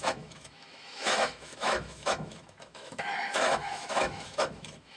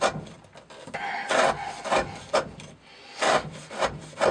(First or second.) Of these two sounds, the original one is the second